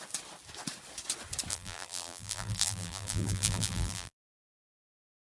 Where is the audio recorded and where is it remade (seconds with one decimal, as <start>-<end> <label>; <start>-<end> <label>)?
0.0-1.5 recorded; 1.5-4.7 remade; 4.7-5.4 recorded